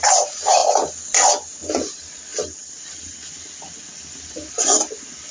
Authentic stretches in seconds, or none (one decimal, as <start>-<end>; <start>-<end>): 0.0-5.3